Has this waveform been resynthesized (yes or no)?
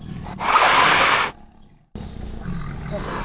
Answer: no